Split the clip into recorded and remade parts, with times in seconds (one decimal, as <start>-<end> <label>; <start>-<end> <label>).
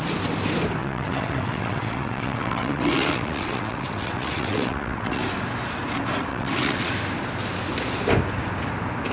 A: 0.0-0.8 recorded; 0.8-5.2 remade; 5.2-6.3 recorded; 6.3-6.9 remade; 6.9-9.1 recorded